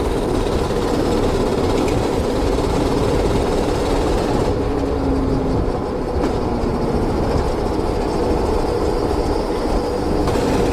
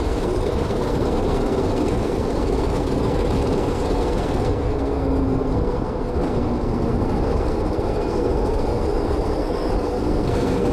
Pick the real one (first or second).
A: first